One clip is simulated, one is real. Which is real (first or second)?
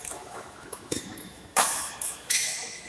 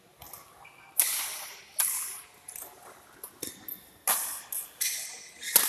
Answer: second